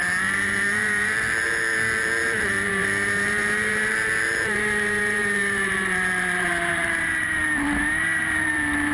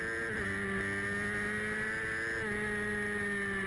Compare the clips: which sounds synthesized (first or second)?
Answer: first